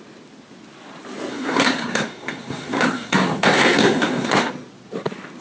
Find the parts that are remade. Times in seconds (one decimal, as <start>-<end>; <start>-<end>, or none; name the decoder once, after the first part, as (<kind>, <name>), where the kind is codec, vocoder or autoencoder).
1.3-4.5 (codec, SNAC)